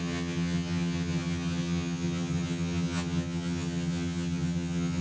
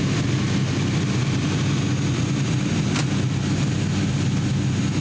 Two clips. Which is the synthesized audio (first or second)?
first